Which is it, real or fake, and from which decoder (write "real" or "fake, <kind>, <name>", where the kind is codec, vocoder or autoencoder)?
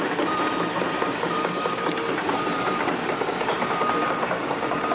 fake, vocoder, BigVGAN v2